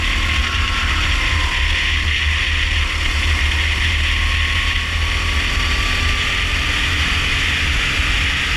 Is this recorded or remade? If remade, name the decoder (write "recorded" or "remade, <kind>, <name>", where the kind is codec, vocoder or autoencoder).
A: recorded